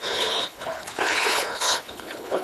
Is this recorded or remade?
remade